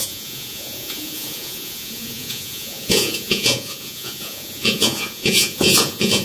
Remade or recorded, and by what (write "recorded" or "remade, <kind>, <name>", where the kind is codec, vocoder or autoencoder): remade, vocoder, Vocos